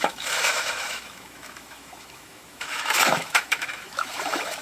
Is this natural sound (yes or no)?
no